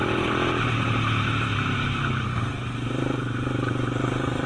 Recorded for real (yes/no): no